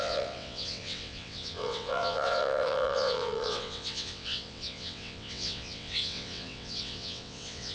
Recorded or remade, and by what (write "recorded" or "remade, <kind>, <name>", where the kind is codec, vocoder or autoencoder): remade, vocoder, WaveNeXt